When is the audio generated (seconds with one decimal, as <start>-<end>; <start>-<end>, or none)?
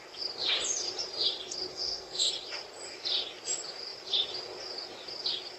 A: 1.7-2.3